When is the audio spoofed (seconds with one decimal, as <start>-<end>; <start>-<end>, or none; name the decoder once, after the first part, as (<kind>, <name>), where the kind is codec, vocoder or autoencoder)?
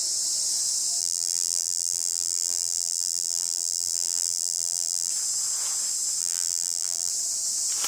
1.0-5.1 (vocoder, BigVGAN v2); 6.2-7.1